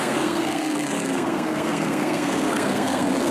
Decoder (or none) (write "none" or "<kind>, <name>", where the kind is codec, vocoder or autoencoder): codec, SNAC